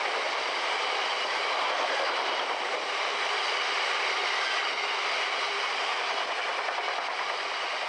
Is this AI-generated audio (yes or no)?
no